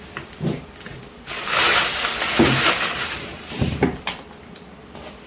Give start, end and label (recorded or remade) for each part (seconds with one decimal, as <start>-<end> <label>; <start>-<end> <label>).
0.0-0.9 recorded; 0.9-4.1 remade; 4.1-5.3 recorded